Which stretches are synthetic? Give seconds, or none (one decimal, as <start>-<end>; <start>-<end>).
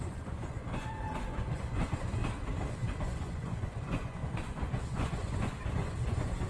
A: 0.0-2.2; 3.0-6.5